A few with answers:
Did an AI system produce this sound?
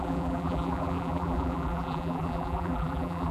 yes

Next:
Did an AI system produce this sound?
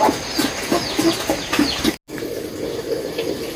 no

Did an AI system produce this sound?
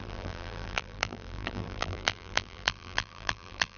yes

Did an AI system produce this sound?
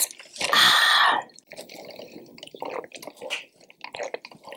no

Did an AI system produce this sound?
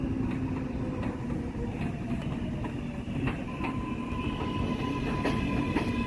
no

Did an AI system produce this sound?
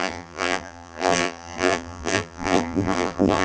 yes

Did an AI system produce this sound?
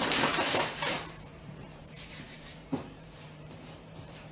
yes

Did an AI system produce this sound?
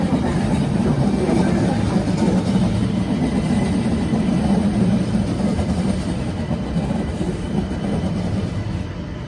yes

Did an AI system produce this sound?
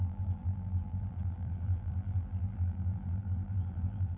yes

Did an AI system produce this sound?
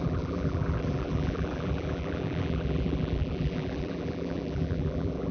yes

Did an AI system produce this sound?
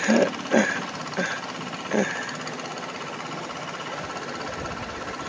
no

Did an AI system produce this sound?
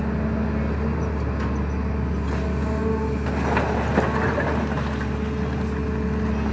no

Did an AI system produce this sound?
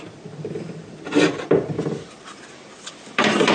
yes